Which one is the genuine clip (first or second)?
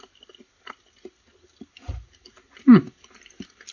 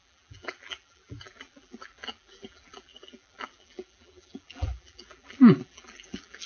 first